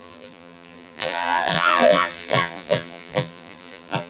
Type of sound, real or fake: fake